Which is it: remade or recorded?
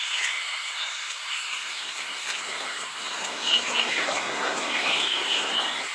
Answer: remade